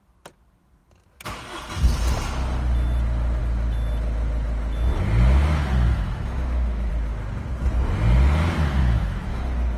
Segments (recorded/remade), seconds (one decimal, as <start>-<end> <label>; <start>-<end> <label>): 0.0-5.9 recorded; 5.9-6.9 remade; 6.9-8.8 recorded; 8.8-9.4 remade; 9.4-9.8 recorded